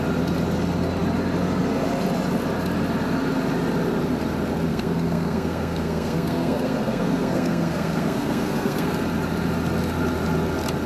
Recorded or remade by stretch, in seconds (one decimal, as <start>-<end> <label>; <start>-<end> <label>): 0.0-4.7 recorded; 4.7-9.0 remade; 9.0-10.9 recorded